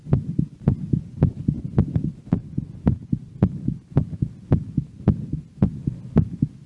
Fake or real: real